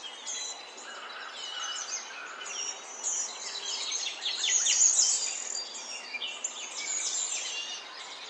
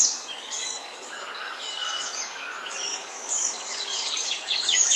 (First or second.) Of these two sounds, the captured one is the first